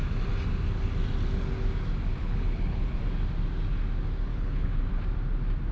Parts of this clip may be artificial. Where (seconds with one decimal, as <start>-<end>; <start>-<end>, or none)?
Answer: 2.2-3.0; 4.3-4.8